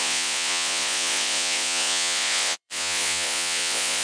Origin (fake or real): fake